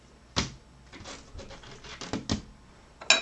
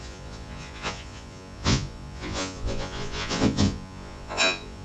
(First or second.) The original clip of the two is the first